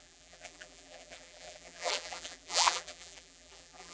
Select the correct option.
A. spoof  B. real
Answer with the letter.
A